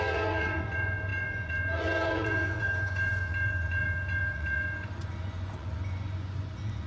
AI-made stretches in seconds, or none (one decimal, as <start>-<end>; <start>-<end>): 0.0-6.9